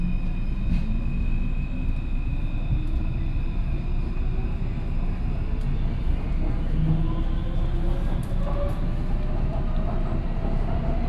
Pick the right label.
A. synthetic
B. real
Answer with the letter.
B